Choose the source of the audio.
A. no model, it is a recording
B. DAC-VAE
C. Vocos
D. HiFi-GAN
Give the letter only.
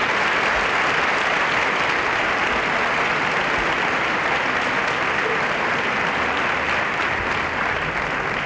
A